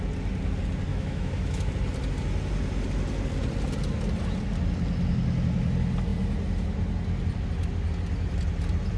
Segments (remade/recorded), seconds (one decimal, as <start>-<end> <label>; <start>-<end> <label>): 0.0-0.9 recorded; 0.9-1.7 remade; 1.7-9.0 recorded